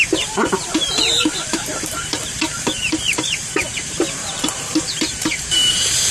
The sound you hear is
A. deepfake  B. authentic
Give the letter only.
A